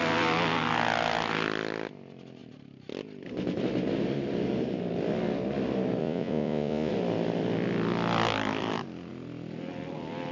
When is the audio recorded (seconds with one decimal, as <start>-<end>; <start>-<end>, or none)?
0.0-6.0; 6.9-10.3